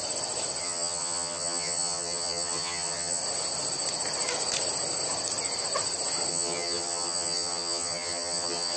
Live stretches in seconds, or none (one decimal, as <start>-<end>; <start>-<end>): 0.0-0.6; 3.2-6.3